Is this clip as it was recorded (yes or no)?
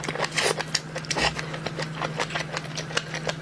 yes